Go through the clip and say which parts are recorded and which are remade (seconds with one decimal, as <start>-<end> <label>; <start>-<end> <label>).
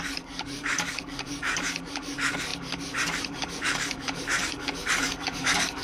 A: 0.0-5.8 remade